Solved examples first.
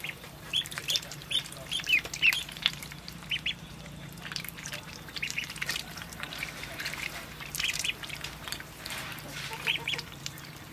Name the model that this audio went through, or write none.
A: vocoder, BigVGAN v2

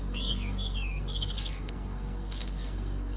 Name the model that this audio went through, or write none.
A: codec, SNAC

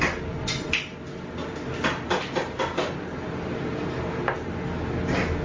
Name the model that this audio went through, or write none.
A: none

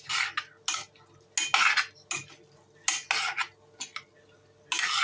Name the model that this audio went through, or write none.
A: none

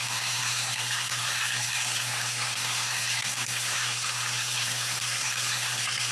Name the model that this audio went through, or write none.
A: codec, SNAC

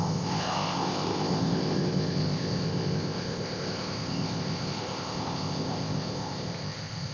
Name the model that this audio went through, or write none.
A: codec, ZipCodec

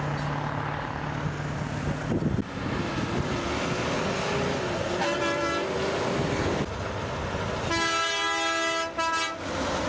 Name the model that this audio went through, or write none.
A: none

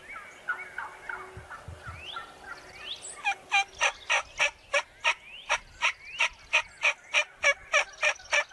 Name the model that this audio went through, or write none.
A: none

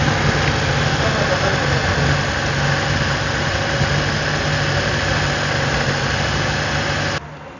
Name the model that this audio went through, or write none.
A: none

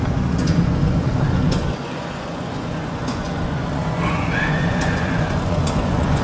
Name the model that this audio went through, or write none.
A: vocoder, Vocos